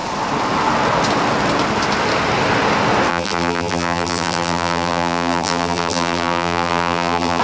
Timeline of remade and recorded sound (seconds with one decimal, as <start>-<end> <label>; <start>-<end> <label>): 0.0-3.1 recorded; 3.1-7.4 remade

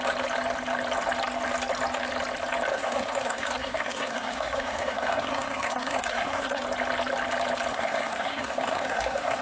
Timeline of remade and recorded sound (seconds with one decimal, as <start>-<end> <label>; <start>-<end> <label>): 0.0-2.7 recorded; 2.7-6.6 remade; 6.6-7.7 recorded; 7.7-9.4 remade